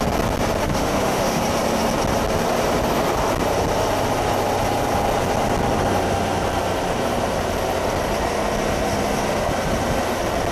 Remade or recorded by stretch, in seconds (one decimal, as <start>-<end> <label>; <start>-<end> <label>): 0.0-0.6 recorded; 0.6-1.4 remade; 1.4-10.5 recorded